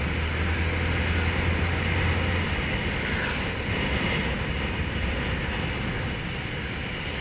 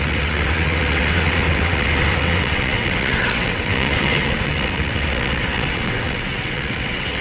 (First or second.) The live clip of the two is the first